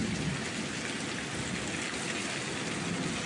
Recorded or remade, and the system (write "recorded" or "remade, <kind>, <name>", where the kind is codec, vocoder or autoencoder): recorded